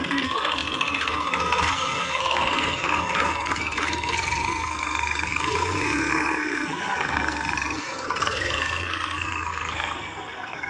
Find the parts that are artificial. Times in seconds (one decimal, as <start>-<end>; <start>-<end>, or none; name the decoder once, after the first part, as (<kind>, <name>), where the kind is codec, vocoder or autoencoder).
0.0-10.7 (codec, SNAC)